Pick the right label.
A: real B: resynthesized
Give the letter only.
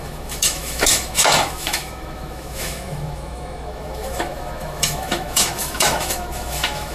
B